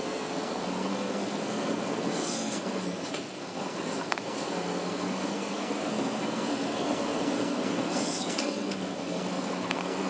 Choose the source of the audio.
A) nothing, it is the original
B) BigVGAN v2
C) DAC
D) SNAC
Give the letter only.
D